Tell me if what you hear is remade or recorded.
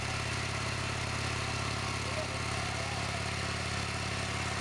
recorded